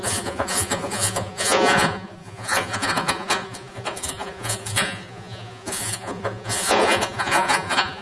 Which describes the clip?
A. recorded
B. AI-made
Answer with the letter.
B